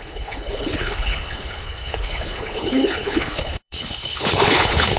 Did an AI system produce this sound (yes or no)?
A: yes